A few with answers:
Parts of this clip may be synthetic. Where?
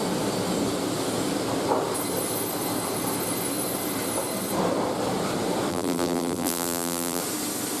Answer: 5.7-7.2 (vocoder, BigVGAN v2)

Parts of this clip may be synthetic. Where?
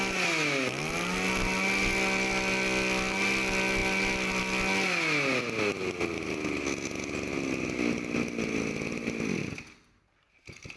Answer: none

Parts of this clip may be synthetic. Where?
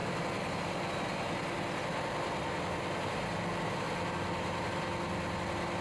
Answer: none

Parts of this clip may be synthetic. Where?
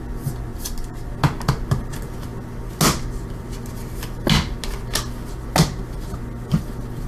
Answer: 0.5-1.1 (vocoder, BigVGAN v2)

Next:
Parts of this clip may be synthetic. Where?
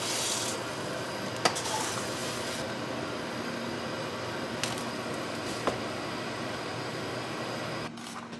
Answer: none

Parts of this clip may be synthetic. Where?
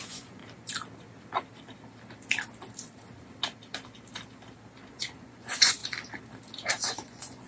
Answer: 0.0-0.4 (vocoder, Vocos); 4.9-5.8; 6.9-7.5